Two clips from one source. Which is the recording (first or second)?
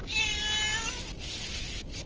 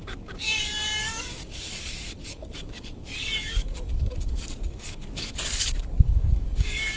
first